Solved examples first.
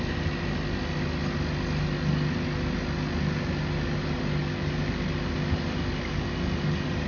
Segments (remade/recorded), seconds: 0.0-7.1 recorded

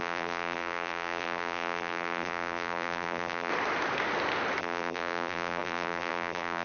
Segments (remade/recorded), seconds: 0.0-3.5 remade; 3.5-4.6 recorded; 4.6-6.6 remade

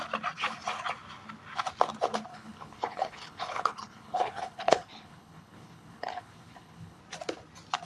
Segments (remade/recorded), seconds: 0.0-2.3 recorded; 2.3-7.0 remade; 7.0-7.9 recorded

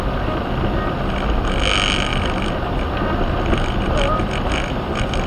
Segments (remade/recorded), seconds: 0.0-5.3 recorded

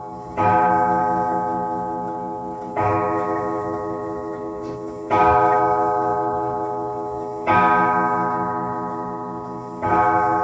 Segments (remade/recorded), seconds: 0.0-1.0 remade; 1.0-2.7 recorded; 2.7-10.4 remade

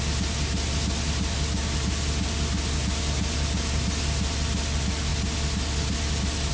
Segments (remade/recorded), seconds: 0.0-6.5 recorded

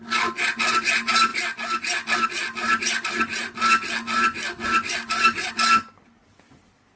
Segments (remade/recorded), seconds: 0.0-7.0 recorded